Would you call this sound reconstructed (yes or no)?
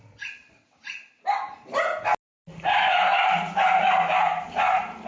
no